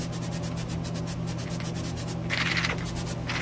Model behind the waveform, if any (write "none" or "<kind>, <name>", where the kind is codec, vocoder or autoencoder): none